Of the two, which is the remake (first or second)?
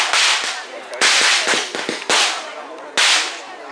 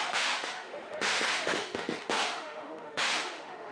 second